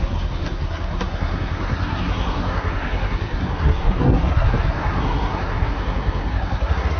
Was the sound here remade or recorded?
remade